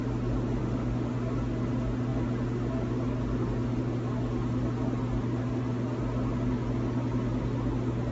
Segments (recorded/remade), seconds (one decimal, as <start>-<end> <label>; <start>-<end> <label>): 0.0-0.6 recorded; 0.6-1.1 remade; 1.1-8.1 recorded